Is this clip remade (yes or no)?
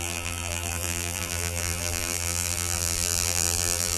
yes